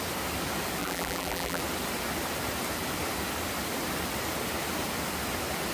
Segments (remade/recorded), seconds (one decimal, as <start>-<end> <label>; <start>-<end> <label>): 0.0-0.8 recorded; 0.8-1.6 remade; 1.6-5.7 recorded